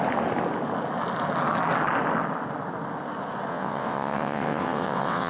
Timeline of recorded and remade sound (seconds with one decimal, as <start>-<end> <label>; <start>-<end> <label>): 0.0-3.5 recorded; 3.5-5.3 remade